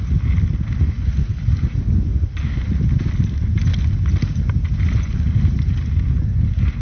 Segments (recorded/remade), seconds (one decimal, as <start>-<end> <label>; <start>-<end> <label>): 0.0-6.8 recorded